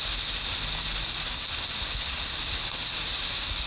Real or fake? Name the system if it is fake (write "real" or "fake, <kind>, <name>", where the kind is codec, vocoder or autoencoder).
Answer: real